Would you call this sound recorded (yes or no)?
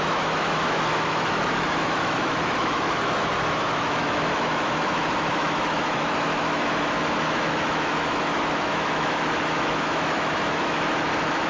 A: no